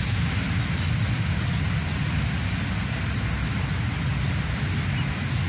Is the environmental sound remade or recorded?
recorded